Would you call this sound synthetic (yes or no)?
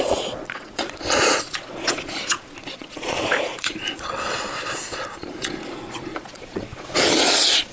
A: yes